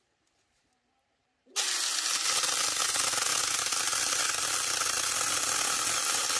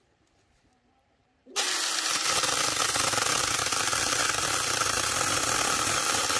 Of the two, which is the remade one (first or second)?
second